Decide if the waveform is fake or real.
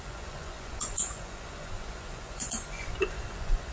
fake